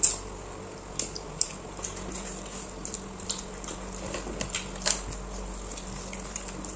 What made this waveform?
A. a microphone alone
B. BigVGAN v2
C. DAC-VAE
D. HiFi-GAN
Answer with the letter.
A